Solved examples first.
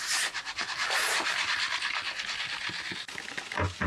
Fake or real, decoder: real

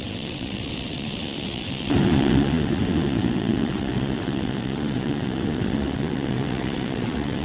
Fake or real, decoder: fake, vocoder, WaveNeXt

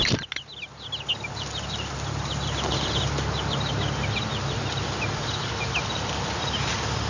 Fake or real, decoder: real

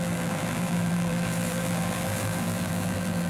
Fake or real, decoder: fake, vocoder, BigVGAN v2